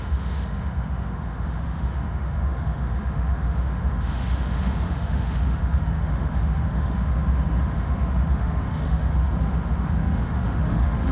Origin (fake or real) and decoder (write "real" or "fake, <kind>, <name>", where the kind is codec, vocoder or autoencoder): fake, autoencoder, DAC-VAE